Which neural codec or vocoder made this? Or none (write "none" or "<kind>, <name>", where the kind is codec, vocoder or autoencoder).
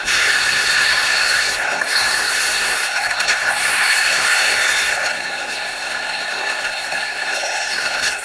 codec, SNAC